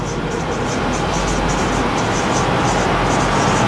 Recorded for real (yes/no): yes